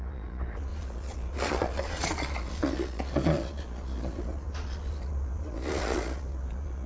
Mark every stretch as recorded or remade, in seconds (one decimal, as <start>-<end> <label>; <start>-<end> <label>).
0.0-6.9 remade